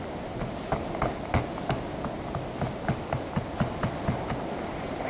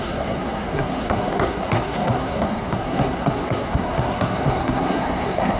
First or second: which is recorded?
first